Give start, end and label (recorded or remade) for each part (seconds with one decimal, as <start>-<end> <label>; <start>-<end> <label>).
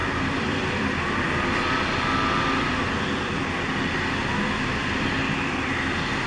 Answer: 0.0-3.8 remade; 3.8-4.8 recorded; 4.8-5.7 remade; 5.7-6.3 recorded